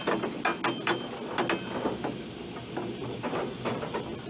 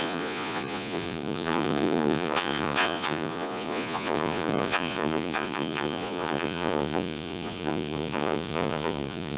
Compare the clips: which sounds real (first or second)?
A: first